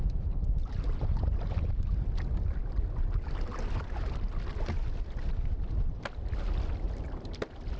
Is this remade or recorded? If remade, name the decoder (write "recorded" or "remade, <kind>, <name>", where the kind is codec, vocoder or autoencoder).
recorded